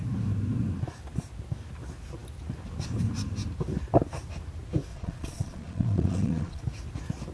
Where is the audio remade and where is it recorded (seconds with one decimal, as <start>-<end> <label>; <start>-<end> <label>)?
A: 0.0-4.9 recorded; 4.9-6.6 remade; 6.6-7.3 recorded